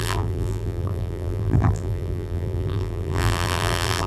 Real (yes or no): no